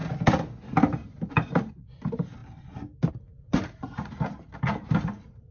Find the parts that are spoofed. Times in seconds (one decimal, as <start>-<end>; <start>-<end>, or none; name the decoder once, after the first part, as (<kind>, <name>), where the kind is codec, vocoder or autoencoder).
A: 3.5-4.1 (vocoder, Vocos)